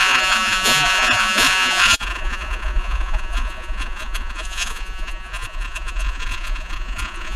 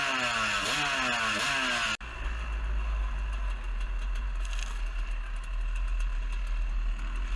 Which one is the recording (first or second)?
second